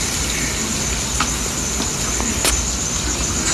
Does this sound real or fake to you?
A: real